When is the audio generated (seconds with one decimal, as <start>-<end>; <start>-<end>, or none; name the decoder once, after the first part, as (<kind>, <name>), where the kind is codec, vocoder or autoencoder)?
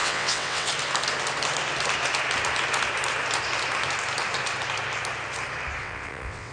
0.0-0.7 (vocoder, WaveNeXt); 5.8-6.5